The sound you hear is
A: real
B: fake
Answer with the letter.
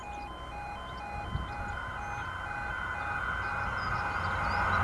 A